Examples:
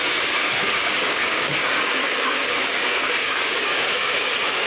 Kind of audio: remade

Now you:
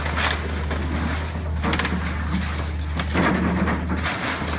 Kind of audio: recorded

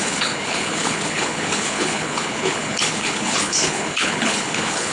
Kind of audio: remade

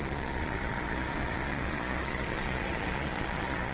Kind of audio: remade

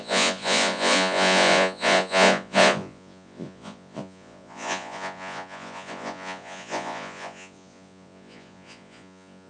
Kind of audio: remade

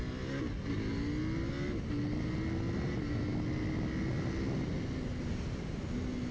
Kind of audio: recorded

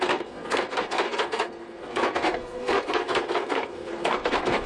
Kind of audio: remade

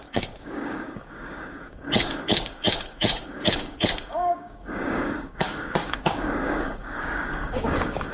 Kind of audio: remade